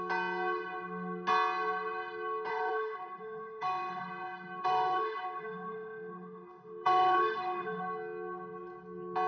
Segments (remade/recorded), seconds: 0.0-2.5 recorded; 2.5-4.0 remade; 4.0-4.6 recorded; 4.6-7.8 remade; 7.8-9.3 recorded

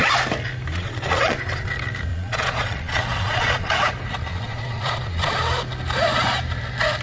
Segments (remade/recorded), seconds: 0.0-0.7 recorded; 0.7-1.7 remade; 1.7-2.1 recorded; 2.1-3.7 remade; 3.7-4.3 recorded; 4.3-5.3 remade; 5.3-7.0 recorded

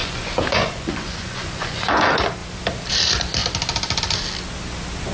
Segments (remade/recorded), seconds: 0.0-2.0 remade; 2.0-5.1 recorded

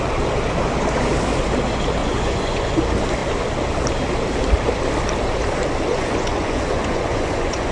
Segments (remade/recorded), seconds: 0.0-2.0 recorded; 2.0-2.8 remade; 2.8-5.9 recorded; 5.9-7.7 remade

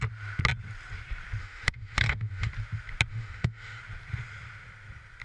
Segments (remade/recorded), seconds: 0.0-1.4 recorded; 1.4-2.5 remade; 2.5-3.1 recorded; 3.1-3.8 remade; 3.8-5.2 recorded

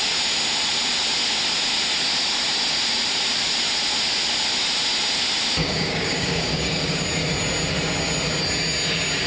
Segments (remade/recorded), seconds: 0.0-5.6 recorded; 5.6-7.0 remade; 7.0-9.3 recorded